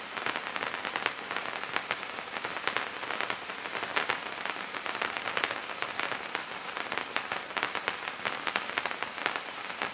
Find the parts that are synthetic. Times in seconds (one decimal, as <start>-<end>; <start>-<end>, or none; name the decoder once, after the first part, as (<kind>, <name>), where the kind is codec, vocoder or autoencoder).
0.0-5.6 (vocoder, BigVGAN v2); 6.2-9.9